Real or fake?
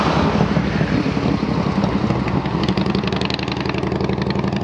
real